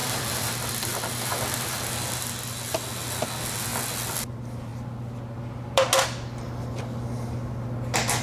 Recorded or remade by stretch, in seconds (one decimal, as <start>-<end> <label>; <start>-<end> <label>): 0.0-1.9 remade; 1.9-8.2 recorded